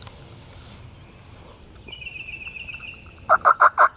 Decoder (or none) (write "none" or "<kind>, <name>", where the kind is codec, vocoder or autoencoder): none